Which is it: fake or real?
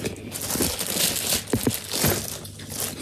real